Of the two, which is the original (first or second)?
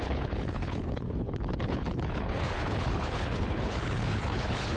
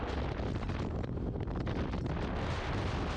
second